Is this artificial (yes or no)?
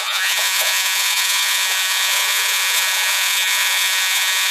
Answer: yes